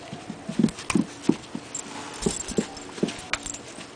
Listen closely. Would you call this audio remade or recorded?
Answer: recorded